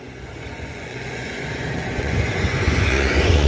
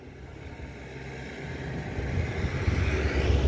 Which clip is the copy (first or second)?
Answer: first